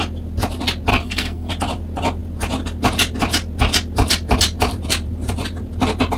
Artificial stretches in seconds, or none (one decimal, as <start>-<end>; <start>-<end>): 0.9-1.5